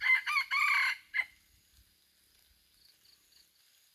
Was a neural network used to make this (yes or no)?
no